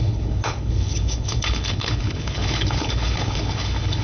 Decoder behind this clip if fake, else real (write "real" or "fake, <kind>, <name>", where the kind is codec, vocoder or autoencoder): fake, codec, HILCodec